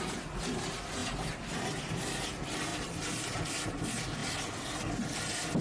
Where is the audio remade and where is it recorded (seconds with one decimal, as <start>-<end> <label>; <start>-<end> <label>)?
0.0-1.0 recorded; 1.0-2.0 remade; 2.0-2.7 recorded; 2.7-3.8 remade; 3.8-5.6 recorded